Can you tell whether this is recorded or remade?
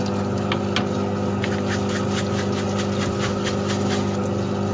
recorded